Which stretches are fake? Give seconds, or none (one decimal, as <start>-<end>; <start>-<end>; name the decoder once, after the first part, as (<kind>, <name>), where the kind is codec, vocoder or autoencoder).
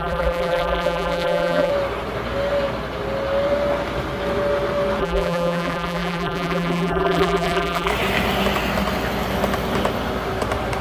0.0-1.7 (vocoder, BigVGAN v2); 5.0-7.9